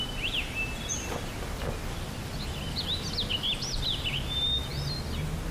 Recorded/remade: recorded